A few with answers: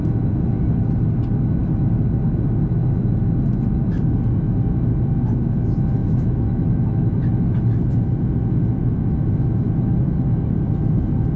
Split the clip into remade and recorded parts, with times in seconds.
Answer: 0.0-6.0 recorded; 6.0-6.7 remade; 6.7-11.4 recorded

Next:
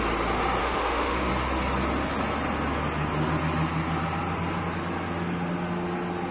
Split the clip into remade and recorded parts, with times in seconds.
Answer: 0.0-0.6 recorded; 0.6-1.3 remade; 1.3-6.3 recorded

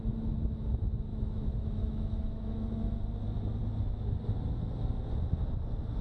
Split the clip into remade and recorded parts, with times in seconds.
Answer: 0.0-1.1 recorded; 1.1-3.0 remade; 3.0-6.0 recorded

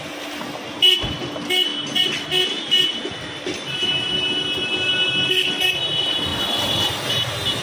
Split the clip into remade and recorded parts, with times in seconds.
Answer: 0.0-7.6 recorded

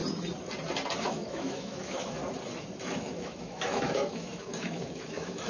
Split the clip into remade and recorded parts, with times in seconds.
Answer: 0.0-1.0 recorded; 1.0-2.2 remade; 2.2-2.9 recorded; 2.9-5.5 remade

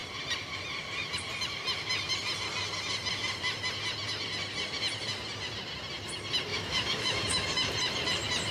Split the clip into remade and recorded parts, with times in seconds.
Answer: 0.0-6.5 recorded; 6.5-7.7 remade; 7.7-8.5 recorded

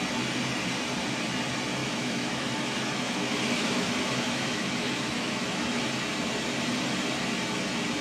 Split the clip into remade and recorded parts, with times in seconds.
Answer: 0.0-1.8 recorded; 1.8-5.8 remade; 5.8-8.0 recorded